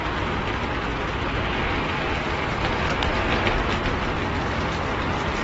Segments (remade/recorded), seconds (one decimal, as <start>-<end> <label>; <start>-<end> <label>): 0.0-5.4 recorded

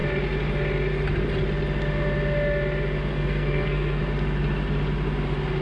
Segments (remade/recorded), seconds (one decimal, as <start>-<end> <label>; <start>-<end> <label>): 0.0-3.1 recorded; 3.1-4.0 remade; 4.0-5.6 recorded

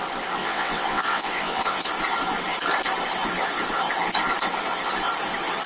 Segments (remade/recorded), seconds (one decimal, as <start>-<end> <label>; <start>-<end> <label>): 0.0-0.4 recorded; 0.4-1.9 remade; 1.9-5.7 recorded

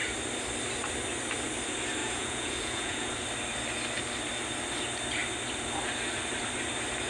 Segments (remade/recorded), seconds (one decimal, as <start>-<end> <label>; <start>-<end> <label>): 0.0-2.0 recorded; 2.0-3.1 remade; 3.1-7.1 recorded